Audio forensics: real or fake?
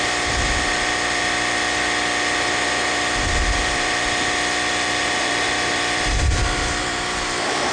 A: fake